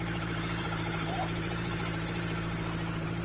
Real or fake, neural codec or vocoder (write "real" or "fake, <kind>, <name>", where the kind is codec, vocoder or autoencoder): fake, vocoder, BigVGAN v2